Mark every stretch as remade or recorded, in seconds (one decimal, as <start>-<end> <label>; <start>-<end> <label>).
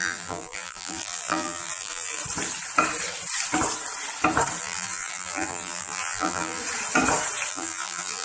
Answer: 0.0-2.2 remade; 2.2-4.6 recorded; 4.6-6.6 remade; 6.6-7.5 recorded; 7.5-8.2 remade